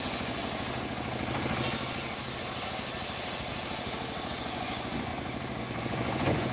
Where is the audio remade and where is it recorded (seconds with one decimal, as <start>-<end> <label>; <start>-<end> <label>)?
0.0-0.4 remade; 0.4-4.3 recorded; 4.3-5.1 remade; 5.1-5.6 recorded; 5.6-6.5 remade